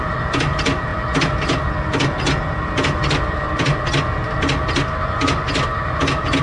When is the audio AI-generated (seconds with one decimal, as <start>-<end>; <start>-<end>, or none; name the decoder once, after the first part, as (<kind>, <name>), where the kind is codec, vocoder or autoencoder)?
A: none